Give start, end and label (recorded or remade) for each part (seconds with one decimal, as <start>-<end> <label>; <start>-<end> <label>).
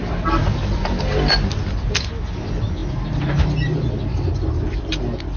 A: 0.0-5.4 recorded